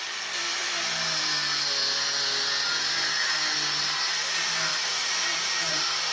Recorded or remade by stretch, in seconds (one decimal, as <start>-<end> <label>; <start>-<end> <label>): 0.0-4.7 recorded; 4.7-6.1 remade